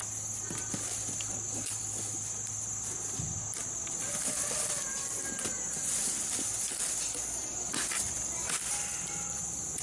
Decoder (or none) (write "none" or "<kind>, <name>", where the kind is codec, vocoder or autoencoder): none